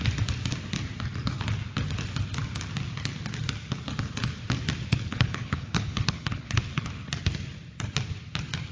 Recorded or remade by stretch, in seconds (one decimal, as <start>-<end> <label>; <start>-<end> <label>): 0.0-5.1 recorded; 5.1-6.6 remade; 6.6-8.7 recorded